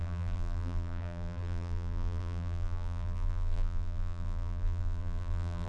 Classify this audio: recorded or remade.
remade